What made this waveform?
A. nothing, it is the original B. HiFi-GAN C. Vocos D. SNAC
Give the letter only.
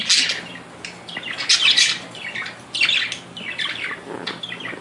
A